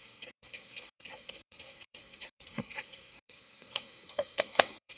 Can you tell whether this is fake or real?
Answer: fake